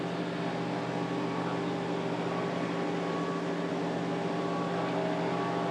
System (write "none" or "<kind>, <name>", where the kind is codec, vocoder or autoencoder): none